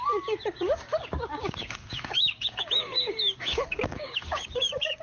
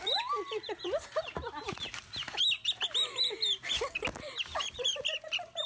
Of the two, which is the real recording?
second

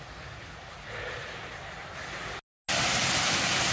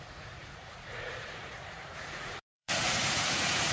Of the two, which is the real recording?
first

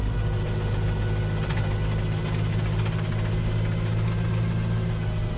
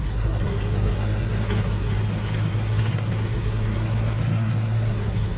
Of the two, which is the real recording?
first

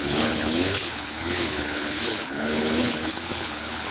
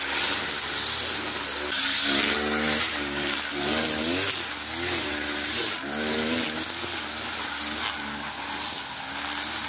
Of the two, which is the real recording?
second